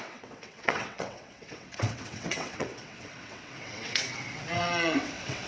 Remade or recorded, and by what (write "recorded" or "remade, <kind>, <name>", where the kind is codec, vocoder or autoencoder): remade, vocoder, WaveNeXt